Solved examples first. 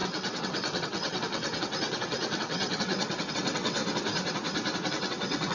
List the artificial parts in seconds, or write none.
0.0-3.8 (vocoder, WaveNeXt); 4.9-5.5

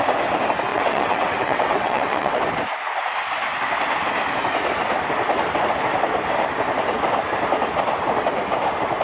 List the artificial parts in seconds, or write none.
0.7-2.4 (vocoder, WaveNeXt)

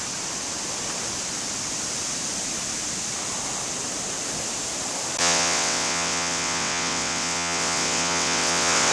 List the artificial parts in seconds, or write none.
5.2-8.9 (vocoder, WaveNeXt)

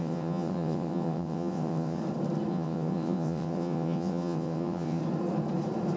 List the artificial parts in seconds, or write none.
0.0-2.0 (vocoder, WaveNeXt); 2.5-5.0